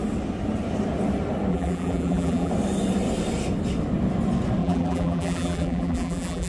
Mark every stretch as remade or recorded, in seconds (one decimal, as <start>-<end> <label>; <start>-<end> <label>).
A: 0.0-1.5 recorded; 1.5-2.5 remade; 2.5-4.6 recorded; 4.6-6.5 remade